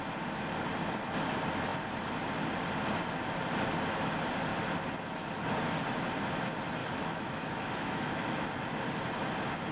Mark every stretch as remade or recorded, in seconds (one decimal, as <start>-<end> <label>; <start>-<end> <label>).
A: 0.0-6.8 recorded; 6.8-8.5 remade; 8.5-9.7 recorded